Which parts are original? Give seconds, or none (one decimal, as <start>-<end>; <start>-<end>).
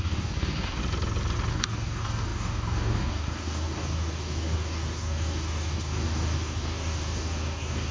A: 0.8-1.5